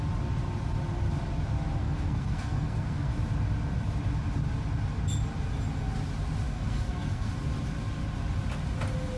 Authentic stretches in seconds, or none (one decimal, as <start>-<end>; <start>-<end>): 0.0-1.8; 3.1-6.5; 7.3-9.2